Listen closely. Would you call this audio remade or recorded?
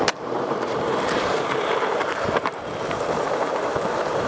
remade